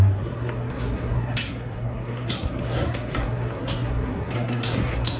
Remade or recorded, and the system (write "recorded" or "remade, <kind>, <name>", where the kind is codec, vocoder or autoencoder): remade, codec, SNAC